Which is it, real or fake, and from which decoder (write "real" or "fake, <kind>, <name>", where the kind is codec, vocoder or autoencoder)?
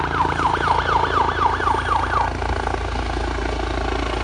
real